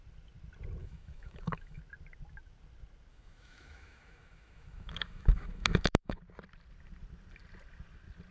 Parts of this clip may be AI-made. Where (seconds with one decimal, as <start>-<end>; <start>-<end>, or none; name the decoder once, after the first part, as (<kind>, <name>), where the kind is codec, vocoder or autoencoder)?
0.8-1.8 (autoencoder, DAC-VAE); 3.1-6.2